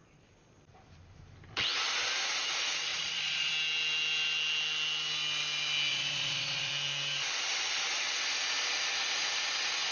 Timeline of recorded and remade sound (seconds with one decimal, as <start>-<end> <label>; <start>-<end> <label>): 0.0-2.9 recorded; 2.9-3.5 remade; 3.5-5.9 recorded; 5.9-6.7 remade; 6.7-9.9 recorded